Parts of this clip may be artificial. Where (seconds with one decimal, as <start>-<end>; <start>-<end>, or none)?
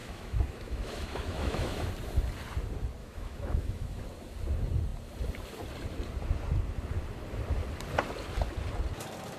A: 0.0-1.9; 3.0-4.0